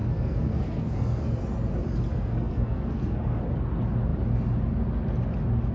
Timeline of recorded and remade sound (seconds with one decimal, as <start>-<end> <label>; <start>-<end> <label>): 0.0-1.4 remade; 1.4-2.1 recorded; 2.1-3.4 remade; 3.4-5.7 recorded